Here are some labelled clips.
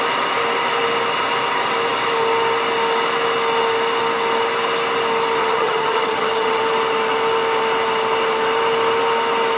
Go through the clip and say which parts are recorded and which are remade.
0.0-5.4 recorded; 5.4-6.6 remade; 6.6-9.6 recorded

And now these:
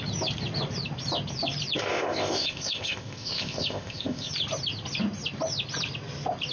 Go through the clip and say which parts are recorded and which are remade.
0.0-1.9 recorded; 1.9-4.3 remade; 4.3-6.5 recorded

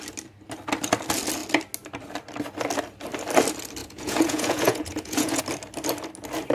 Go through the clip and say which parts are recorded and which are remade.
0.0-3.8 recorded; 3.8-5.4 remade; 5.4-6.5 recorded

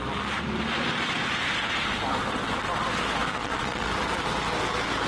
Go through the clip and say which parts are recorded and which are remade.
0.0-3.3 recorded; 3.3-3.9 remade; 3.9-5.1 recorded